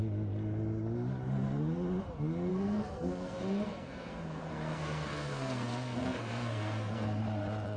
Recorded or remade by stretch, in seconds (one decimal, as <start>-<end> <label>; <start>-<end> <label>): 0.0-2.5 recorded; 2.5-7.2 remade; 7.2-7.8 recorded